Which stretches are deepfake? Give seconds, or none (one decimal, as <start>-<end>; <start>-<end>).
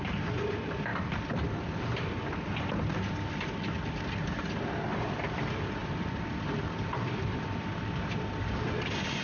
0.9-1.8; 5.8-8.1